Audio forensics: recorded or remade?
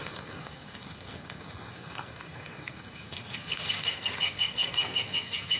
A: remade